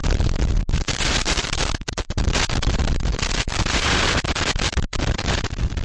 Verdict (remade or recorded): remade